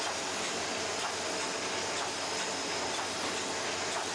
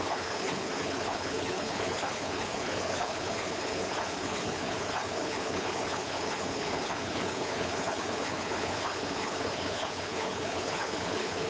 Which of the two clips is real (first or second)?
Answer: first